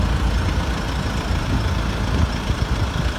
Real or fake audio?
real